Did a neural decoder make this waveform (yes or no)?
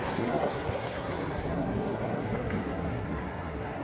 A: yes